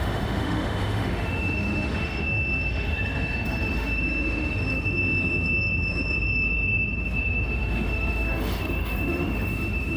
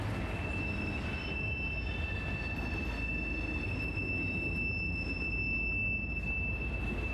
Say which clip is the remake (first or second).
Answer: first